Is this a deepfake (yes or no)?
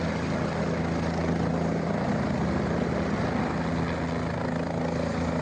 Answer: no